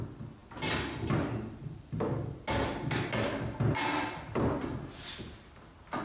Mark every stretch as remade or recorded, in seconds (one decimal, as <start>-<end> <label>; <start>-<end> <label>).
0.0-6.0 recorded